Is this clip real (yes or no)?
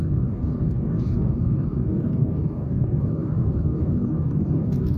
no